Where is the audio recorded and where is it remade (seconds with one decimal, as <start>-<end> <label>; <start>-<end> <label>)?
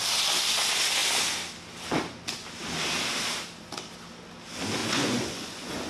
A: 0.0-4.8 recorded; 4.8-5.9 remade